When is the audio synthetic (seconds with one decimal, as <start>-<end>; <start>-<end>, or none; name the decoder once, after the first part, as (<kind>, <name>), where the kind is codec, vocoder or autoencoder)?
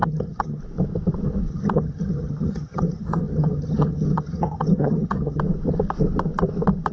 0.0-0.6 (vocoder, HiFi-GAN); 1.5-5.4